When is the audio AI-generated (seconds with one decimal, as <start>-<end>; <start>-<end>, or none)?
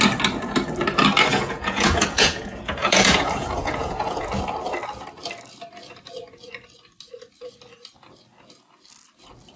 1.3-4.3